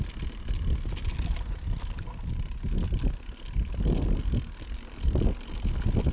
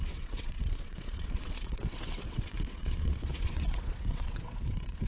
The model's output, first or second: second